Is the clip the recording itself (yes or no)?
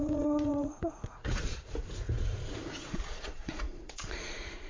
no